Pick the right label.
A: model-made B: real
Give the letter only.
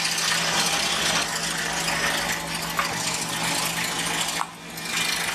B